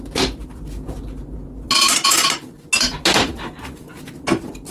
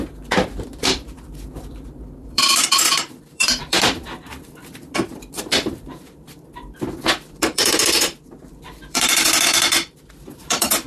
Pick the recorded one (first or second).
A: first